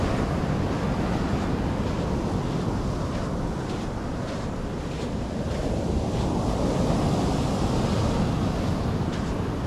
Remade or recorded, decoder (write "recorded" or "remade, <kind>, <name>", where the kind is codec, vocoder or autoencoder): recorded